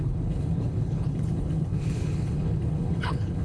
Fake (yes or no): yes